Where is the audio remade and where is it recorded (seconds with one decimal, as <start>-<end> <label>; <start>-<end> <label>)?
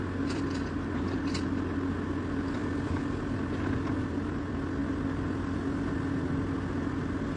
0.0-7.4 recorded